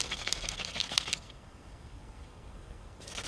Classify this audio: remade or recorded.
remade